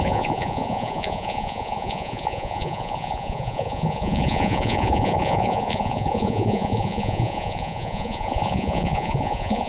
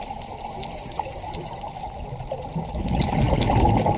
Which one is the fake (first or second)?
first